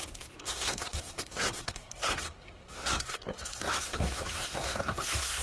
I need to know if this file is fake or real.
fake